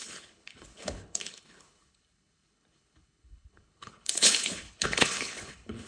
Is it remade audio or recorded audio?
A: remade